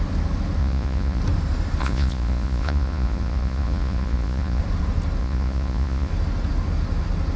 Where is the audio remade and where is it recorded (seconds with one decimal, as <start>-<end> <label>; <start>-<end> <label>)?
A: 0.0-0.6 recorded; 0.6-1.2 remade; 1.2-1.8 recorded; 1.8-4.6 remade; 4.6-5.2 recorded; 5.2-6.1 remade; 6.1-7.4 recorded